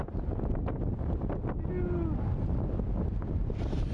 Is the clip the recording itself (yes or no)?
yes